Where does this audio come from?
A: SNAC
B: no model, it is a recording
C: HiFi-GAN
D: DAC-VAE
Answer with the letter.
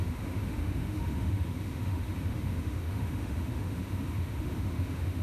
D